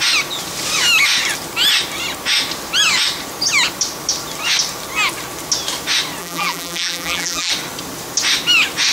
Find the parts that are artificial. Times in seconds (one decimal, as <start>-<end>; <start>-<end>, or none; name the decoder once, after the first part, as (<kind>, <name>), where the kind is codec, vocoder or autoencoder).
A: 6.2-7.5 (vocoder, BigVGAN v2)